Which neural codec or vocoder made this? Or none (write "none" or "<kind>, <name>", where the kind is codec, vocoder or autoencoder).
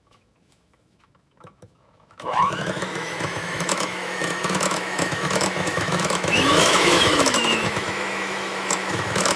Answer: autoencoder, DAC-VAE